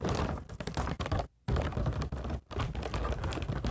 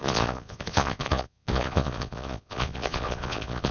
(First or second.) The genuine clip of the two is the first